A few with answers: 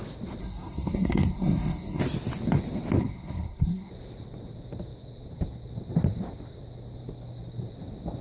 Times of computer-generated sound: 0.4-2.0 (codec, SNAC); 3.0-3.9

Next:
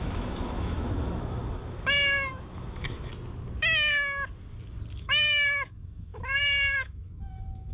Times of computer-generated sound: 0.0-3.1 (autoencoder, DAC-VAE); 5.0-7.7

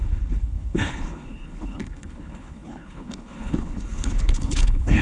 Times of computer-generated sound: 0.0-5.0 (codec, HILCodec)

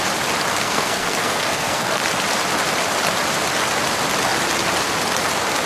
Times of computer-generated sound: 0.5-2.0 (codec, SNAC)

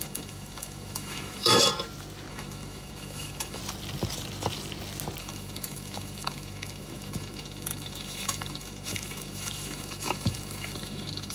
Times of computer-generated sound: 0.0-1.7 (autoencoder, DAC-VAE); 2.3-3.6; 5.2-11.3

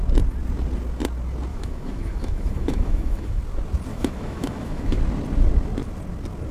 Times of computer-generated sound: 1.5-3.4 (autoencoder, DAC-VAE); 3.9-5.0

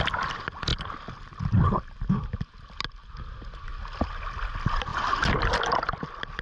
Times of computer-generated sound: 0.7-1.2 (vocoder, BigVGAN v2)